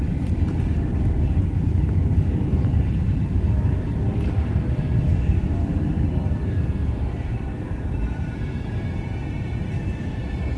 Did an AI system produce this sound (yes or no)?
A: yes